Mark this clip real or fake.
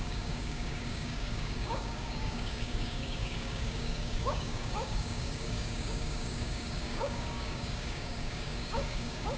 fake